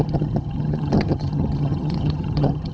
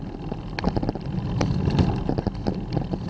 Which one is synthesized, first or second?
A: first